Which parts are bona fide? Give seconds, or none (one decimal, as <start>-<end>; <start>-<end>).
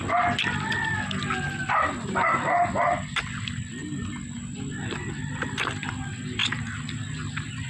0.0-7.7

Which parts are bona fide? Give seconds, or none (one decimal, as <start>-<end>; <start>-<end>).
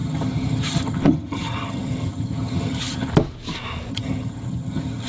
3.1-3.9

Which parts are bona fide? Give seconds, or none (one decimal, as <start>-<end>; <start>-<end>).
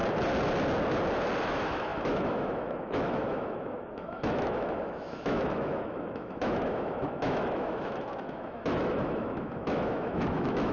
0.0-1.4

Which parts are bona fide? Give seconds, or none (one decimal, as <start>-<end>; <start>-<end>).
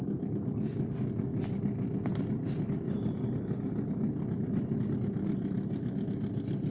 0.0-6.7